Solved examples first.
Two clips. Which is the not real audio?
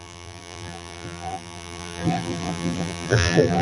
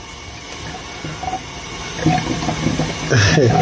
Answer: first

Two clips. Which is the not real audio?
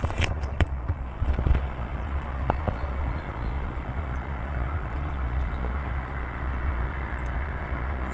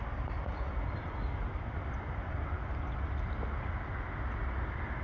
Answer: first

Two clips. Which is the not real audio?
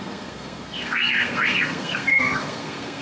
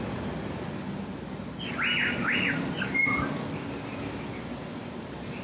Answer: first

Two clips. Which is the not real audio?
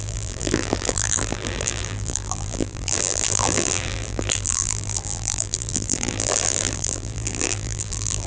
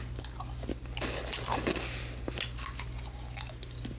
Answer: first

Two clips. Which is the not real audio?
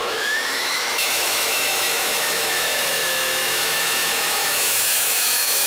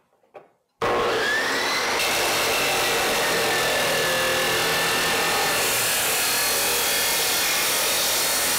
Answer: first